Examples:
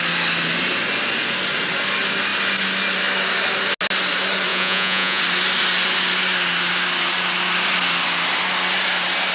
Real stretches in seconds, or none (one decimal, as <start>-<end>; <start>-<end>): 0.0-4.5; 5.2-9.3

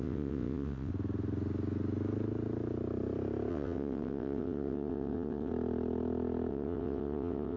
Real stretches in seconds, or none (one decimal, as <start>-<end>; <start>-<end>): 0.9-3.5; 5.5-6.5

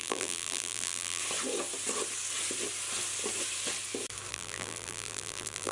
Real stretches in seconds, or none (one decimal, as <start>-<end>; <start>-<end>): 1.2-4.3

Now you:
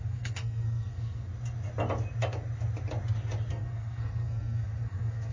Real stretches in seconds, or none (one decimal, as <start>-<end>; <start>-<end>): 1.3-3.5

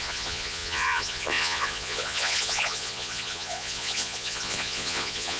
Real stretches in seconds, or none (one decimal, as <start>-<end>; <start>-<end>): none